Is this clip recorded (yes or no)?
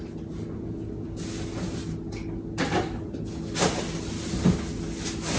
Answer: yes